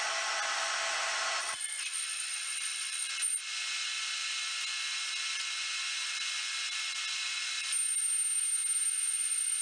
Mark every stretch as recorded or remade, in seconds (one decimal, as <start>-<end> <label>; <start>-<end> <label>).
0.0-1.4 recorded; 1.4-3.1 remade; 3.1-9.6 recorded